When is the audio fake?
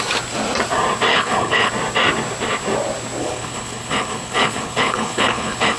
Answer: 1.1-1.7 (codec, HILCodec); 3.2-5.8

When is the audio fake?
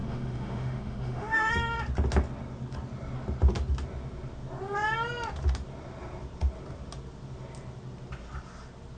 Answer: 0.0-1.5 (autoencoder, DAC-VAE)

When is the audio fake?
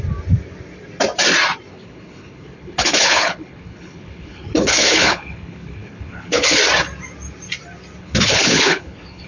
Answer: 1.7-6.6 (codec, HILCodec); 8.0-9.3